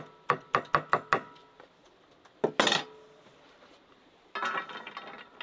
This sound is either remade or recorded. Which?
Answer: recorded